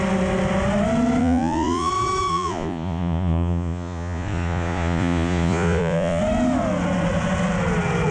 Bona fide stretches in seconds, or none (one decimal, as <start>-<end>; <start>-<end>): 0.0-1.2; 1.9-2.3; 6.2-8.1